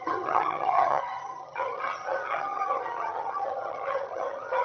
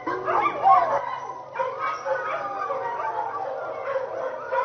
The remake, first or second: first